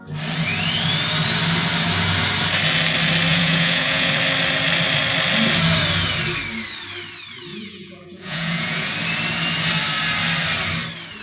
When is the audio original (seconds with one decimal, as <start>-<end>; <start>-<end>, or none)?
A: 0.0-3.3; 4.1-7.5; 8.9-11.2